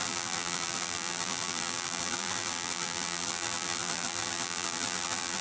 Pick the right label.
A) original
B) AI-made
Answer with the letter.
B